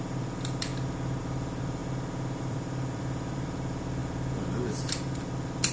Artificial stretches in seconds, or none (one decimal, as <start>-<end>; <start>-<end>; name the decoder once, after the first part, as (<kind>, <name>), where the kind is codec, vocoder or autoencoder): 0.0-0.7 (vocoder, BigVGAN v2); 1.2-1.8; 2.4-5.7